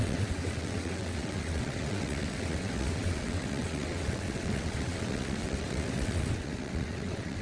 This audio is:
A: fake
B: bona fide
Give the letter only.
A